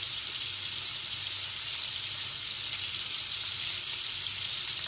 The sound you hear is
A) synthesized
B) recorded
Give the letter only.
B